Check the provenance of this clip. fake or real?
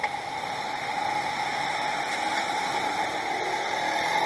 real